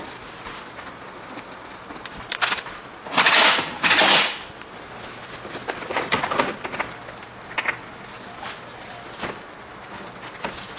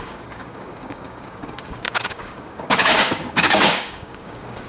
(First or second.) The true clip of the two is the first